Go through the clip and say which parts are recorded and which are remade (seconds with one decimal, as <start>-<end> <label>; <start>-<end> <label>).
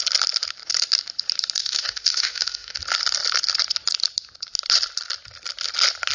0.0-1.6 recorded; 1.6-2.8 remade; 2.8-6.1 recorded